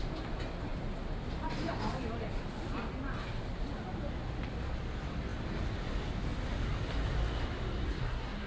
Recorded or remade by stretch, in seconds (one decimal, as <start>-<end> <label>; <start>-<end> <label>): 0.0-7.9 recorded; 7.9-8.5 remade